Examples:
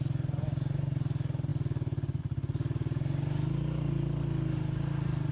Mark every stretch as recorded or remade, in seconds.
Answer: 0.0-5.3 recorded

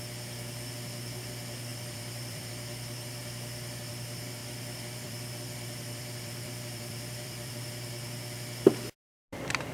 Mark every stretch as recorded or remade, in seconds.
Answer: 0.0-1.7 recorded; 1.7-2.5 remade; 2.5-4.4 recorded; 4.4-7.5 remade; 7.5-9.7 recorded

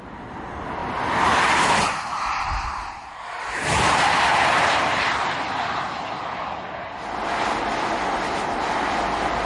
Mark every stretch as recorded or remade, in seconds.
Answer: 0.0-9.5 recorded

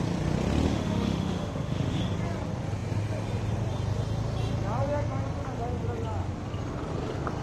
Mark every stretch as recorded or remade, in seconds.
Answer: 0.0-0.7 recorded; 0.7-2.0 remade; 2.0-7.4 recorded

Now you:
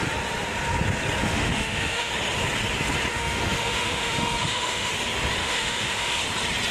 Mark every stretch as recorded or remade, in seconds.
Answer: 0.0-1.2 recorded; 1.2-2.1 remade; 2.1-3.1 recorded; 3.1-4.9 remade; 4.9-5.4 recorded; 5.4-6.2 remade; 6.2-6.7 recorded

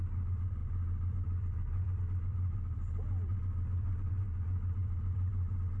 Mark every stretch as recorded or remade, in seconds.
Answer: 0.0-5.8 recorded

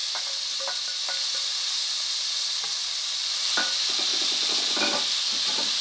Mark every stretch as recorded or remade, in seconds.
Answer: 0.0-5.8 recorded